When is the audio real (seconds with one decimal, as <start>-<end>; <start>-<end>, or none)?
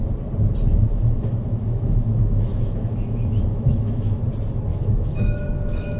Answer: 0.0-0.7; 4.3-4.7